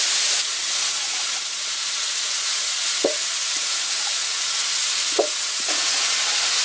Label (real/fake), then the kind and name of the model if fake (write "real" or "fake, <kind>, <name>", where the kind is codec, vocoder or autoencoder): fake, vocoder, Vocos